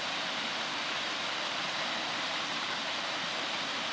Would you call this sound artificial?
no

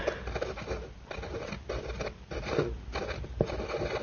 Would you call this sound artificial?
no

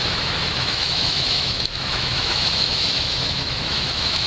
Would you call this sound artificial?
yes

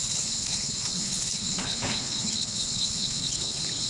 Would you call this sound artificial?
yes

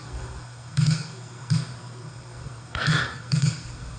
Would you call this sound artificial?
yes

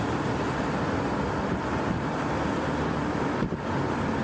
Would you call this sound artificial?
no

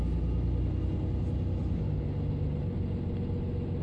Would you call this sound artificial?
no